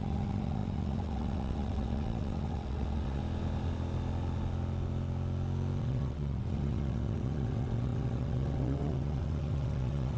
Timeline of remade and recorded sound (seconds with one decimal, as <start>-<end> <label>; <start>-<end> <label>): 0.0-3.2 remade; 3.2-5.8 recorded; 5.8-10.2 remade